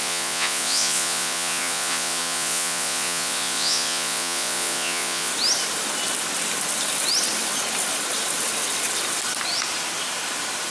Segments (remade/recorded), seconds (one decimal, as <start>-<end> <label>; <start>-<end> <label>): 0.0-5.3 remade; 5.3-10.7 recorded